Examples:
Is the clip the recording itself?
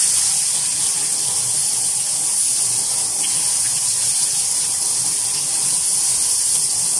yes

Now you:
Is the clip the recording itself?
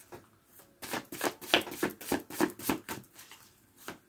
yes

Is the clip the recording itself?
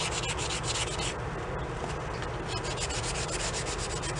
yes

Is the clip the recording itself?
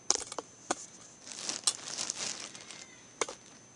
yes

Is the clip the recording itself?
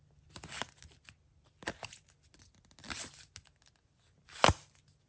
yes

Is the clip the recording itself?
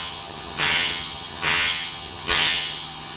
no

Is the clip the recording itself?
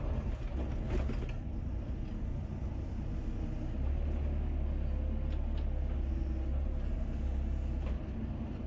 yes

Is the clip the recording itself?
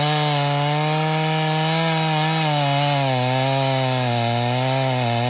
yes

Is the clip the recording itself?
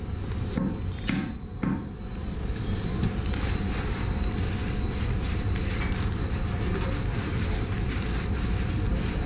yes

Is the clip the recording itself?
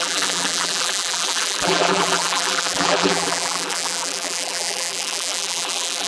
no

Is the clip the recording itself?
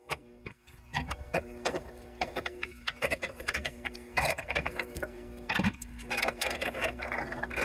no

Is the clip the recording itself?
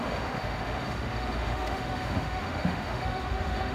no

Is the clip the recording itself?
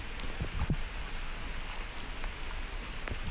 yes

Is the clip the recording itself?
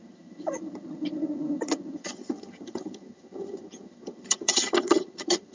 no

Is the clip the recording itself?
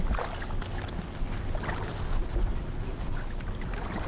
yes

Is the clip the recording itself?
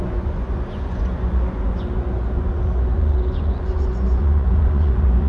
no